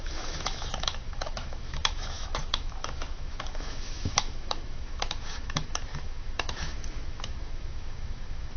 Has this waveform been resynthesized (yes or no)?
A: yes